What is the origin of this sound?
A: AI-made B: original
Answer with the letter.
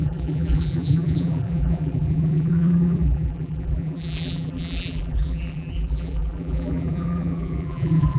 A